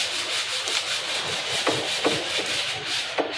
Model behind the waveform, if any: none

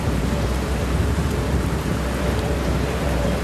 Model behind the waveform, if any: vocoder, BigVGAN v2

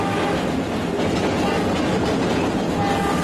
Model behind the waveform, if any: none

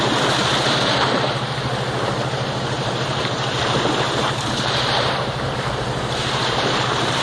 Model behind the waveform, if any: vocoder, BigVGAN v2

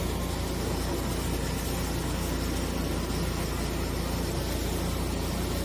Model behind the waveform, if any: none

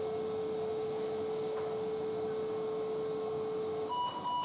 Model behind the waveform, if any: none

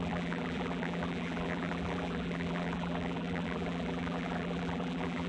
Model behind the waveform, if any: vocoder, BigVGAN v2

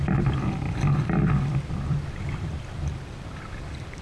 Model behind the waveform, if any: vocoder, BigVGAN v2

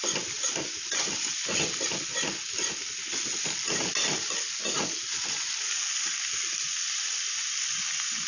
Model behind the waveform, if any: none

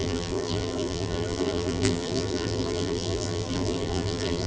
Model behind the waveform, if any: vocoder, BigVGAN v2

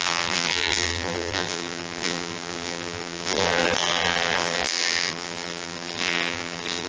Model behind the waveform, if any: vocoder, BigVGAN v2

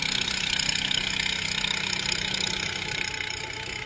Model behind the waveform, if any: none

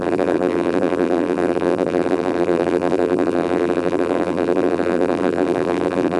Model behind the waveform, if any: vocoder, BigVGAN v2